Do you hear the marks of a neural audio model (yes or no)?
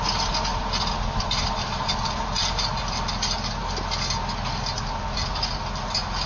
no